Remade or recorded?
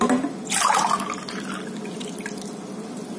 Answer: recorded